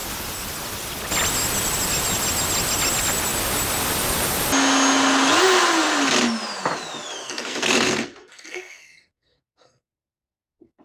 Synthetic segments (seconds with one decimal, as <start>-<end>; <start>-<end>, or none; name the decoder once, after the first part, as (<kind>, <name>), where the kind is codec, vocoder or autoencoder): 7.2-10.8 (codec, SNAC)